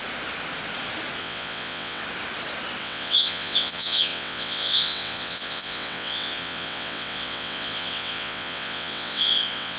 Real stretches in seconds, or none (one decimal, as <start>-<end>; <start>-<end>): 0.0-1.2; 2.0-2.8